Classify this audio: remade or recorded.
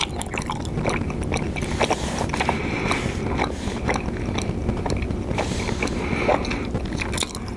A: recorded